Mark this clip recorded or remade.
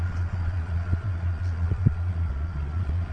remade